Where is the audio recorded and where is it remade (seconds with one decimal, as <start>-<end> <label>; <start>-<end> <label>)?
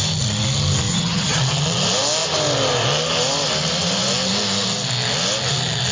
0.0-0.9 recorded; 0.9-1.4 remade; 1.4-5.9 recorded